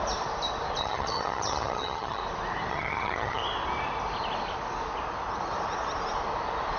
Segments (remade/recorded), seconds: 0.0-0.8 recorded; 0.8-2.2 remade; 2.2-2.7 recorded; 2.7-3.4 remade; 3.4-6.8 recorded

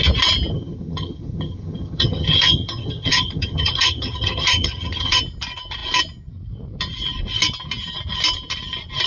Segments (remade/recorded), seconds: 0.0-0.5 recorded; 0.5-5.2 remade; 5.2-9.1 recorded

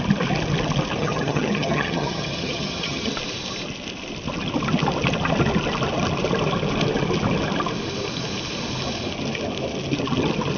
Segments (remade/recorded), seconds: 0.0-1.0 recorded; 1.0-3.1 remade; 3.1-10.6 recorded

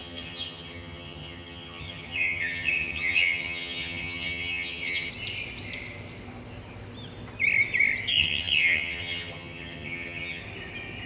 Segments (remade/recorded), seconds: 0.0-5.1 remade; 5.1-8.1 recorded; 8.1-10.4 remade; 10.4-11.1 recorded

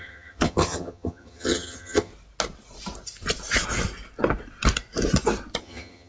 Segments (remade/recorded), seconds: 0.0-2.1 remade; 2.1-5.6 recorded; 5.6-6.1 remade

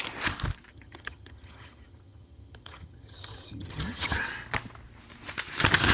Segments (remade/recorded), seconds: 0.0-0.7 recorded; 0.7-4.2 remade; 4.2-5.9 recorded